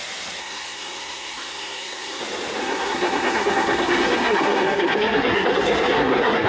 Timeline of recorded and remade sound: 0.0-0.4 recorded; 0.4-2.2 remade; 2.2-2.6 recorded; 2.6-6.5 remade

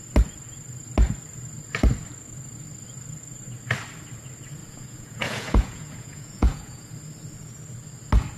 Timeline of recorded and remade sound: 0.0-4.6 recorded; 4.6-6.9 remade; 6.9-8.4 recorded

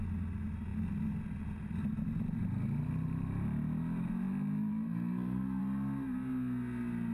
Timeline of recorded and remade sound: 0.0-4.7 recorded; 4.7-5.6 remade; 5.6-7.1 recorded

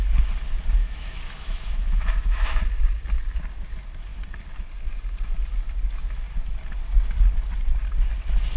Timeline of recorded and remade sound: 0.0-0.8 recorded; 0.8-2.6 remade; 2.6-8.6 recorded

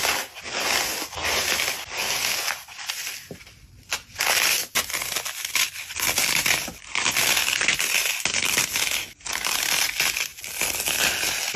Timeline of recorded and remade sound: 0.0-11.6 recorded